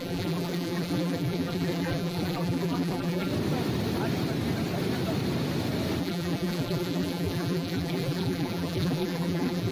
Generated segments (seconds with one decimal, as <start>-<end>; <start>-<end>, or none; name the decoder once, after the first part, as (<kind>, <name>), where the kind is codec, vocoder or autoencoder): 0.0-3.3 (vocoder, BigVGAN v2); 6.0-9.7